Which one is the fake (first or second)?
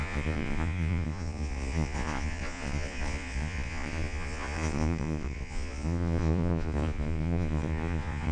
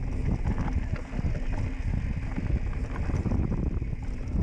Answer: first